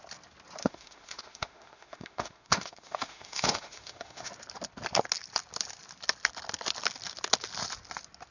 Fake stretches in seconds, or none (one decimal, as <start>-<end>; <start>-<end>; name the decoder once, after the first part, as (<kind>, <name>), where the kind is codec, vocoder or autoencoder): 0.6-4.3 (autoencoder, DAC-VAE)